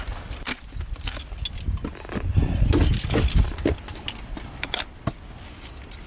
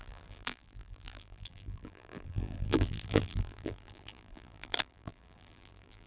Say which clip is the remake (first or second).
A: second